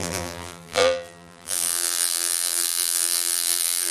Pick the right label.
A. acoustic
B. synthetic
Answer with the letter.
B